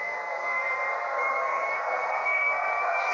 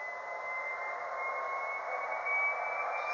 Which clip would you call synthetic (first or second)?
first